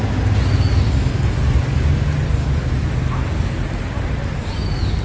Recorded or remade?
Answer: recorded